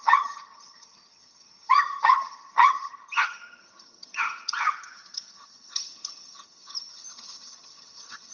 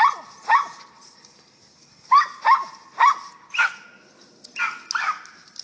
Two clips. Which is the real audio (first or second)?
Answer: second